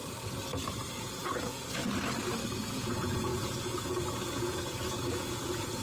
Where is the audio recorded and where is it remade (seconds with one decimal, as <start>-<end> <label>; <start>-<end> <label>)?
0.0-0.9 recorded; 0.9-1.8 remade; 1.8-2.5 recorded; 2.5-5.8 remade